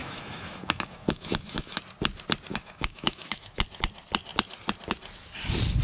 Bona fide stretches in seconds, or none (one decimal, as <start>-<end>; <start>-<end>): 1.8-2.5; 3.6-5.8